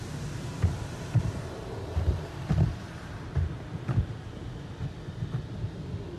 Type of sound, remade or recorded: recorded